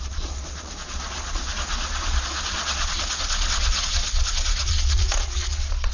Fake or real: fake